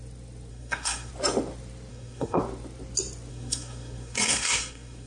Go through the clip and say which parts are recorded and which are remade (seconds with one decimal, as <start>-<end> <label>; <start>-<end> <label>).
0.0-0.5 recorded; 0.5-1.1 remade; 1.1-1.9 recorded; 1.9-2.4 remade; 2.4-3.3 recorded; 3.3-5.1 remade

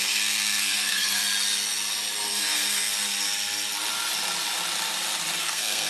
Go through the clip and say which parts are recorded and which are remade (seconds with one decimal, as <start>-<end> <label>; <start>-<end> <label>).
0.0-1.2 remade; 1.2-2.3 recorded; 2.3-2.9 remade; 2.9-5.4 recorded; 5.4-5.9 remade

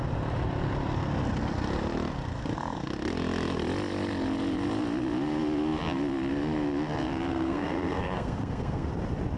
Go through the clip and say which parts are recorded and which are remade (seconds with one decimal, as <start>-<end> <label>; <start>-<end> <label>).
0.0-7.3 recorded; 7.3-8.9 remade; 8.9-9.4 recorded

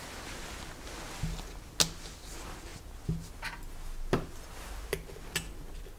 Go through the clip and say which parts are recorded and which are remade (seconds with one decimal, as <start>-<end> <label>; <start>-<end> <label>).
0.0-6.0 recorded

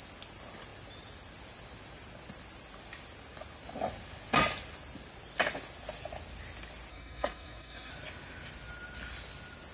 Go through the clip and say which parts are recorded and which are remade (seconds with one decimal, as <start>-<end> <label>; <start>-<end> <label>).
0.0-6.9 recorded; 6.9-7.9 remade; 7.9-9.7 recorded